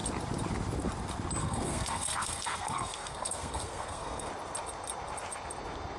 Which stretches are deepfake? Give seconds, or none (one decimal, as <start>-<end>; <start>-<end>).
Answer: 1.4-4.3